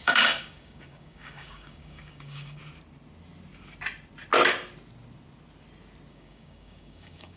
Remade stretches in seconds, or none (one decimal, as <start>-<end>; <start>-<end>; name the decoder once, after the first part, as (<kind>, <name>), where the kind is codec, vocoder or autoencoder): 0.0-2.6 (codec, DAC); 6.1-7.4